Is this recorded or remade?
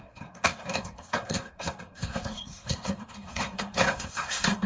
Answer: remade